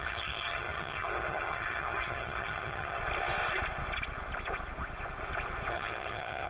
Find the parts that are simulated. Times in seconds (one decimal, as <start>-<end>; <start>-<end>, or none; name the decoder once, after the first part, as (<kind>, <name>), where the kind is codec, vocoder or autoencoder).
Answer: 0.0-3.0 (vocoder, HiFi-GAN); 5.7-6.5